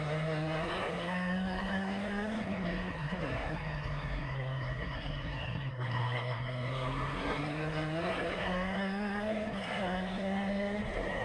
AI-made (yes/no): yes